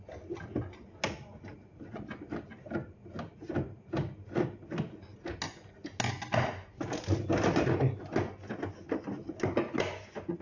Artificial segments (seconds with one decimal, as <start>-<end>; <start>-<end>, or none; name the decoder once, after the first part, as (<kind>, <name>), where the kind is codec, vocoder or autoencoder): none